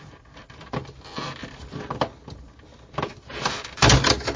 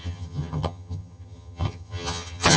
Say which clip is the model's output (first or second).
second